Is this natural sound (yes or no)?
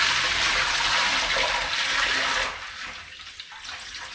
yes